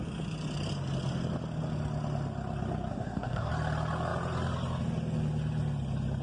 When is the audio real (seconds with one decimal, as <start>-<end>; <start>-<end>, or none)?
0.0-2.9; 3.5-6.2